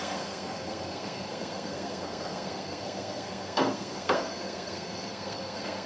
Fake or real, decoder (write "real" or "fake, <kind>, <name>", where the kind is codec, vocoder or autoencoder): fake, codec, SNAC